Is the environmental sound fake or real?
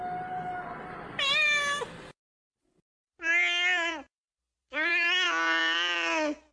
real